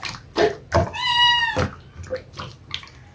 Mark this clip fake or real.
real